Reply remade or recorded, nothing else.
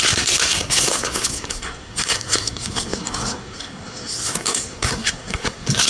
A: remade